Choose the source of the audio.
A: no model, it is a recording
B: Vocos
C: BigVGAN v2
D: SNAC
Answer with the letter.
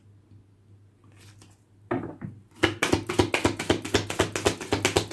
A